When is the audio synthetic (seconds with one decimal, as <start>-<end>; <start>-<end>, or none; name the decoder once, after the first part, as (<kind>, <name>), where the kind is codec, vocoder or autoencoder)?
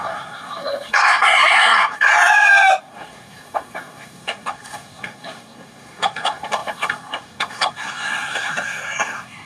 0.0-2.1 (codec, SNAC); 2.8-9.5